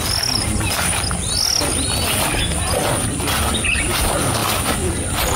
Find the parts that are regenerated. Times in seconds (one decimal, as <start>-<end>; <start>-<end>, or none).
none